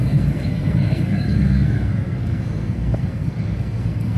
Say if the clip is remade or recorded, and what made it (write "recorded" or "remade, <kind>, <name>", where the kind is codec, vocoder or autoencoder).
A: remade, codec, SNAC